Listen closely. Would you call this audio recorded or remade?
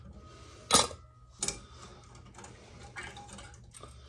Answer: recorded